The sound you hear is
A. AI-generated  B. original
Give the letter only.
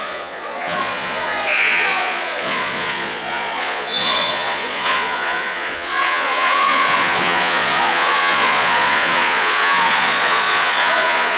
A